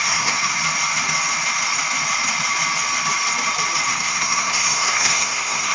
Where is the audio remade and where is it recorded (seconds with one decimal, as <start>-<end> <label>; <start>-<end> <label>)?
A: 0.0-0.5 remade; 0.5-3.9 recorded; 3.9-5.7 remade